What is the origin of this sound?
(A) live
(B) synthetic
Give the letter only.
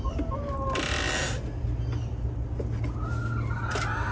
A